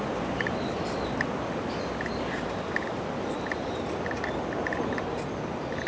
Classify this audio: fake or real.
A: real